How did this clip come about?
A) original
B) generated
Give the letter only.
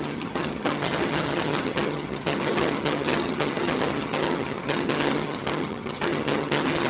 B